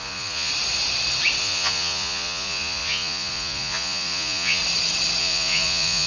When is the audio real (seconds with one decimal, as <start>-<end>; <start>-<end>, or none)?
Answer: 0.5-1.4; 4.6-5.2

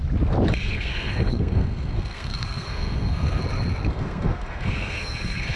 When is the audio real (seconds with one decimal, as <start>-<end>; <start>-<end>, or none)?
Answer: 0.0-0.5; 3.4-3.8

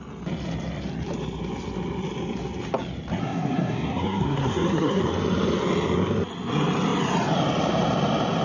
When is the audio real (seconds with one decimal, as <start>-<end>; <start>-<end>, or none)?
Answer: 0.0-3.2; 5.0-8.4

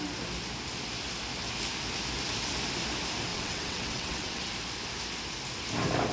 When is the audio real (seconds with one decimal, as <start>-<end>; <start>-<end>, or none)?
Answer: 0.0-3.3; 4.4-6.1

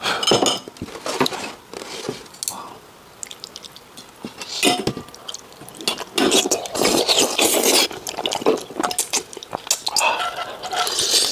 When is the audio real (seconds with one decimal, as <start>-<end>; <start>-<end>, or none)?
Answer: 0.0-11.3

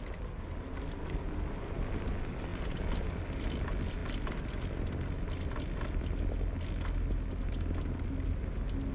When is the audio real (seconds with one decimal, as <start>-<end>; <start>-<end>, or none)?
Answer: 0.0-8.9

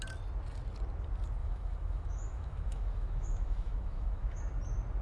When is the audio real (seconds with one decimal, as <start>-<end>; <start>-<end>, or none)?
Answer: 0.0-1.4; 4.4-5.0

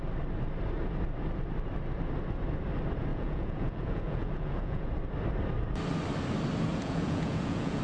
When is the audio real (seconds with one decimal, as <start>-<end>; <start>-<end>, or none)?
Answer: 0.0-3.1; 4.9-6.7